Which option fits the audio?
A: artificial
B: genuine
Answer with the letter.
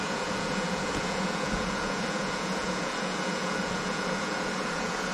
A